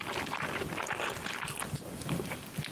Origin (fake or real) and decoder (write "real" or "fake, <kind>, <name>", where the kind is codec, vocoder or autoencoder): real